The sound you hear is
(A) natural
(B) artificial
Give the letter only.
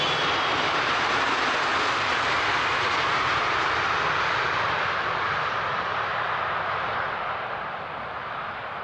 B